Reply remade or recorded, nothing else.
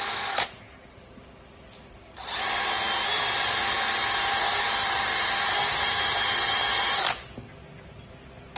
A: recorded